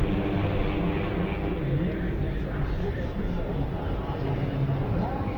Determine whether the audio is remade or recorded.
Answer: recorded